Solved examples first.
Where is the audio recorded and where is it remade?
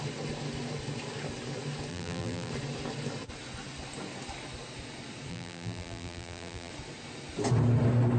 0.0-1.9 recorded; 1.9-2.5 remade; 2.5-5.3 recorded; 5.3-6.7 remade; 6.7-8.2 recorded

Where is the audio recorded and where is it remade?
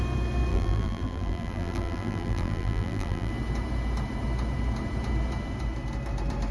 0.0-0.5 recorded; 0.5-3.3 remade; 3.3-6.5 recorded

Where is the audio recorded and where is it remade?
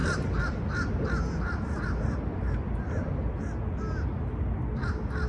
0.0-5.3 recorded